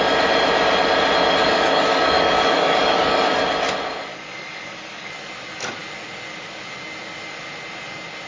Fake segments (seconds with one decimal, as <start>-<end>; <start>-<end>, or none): 1.4-3.4; 4.1-5.1